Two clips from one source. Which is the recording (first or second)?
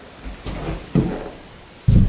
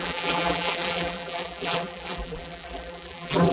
first